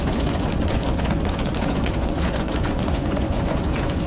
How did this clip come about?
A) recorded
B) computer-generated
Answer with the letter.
B